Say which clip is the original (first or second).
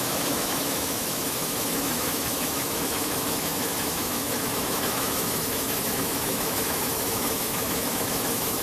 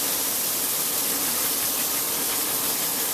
second